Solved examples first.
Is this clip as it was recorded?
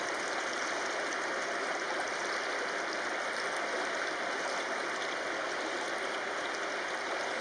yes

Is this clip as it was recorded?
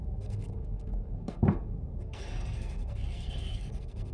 no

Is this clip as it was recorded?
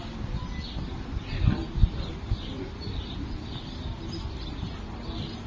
yes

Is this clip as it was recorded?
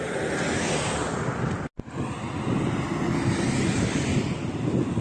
yes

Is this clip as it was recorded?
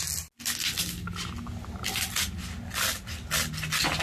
yes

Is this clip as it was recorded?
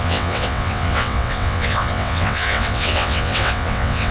no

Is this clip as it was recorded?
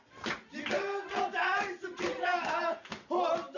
yes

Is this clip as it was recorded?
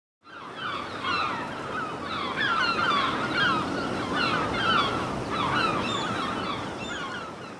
yes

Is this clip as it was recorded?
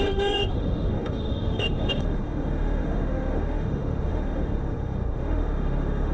no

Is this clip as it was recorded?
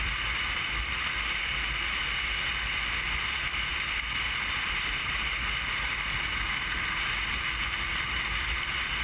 yes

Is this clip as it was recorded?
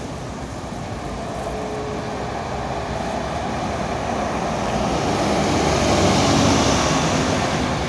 yes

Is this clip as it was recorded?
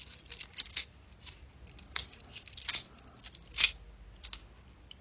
yes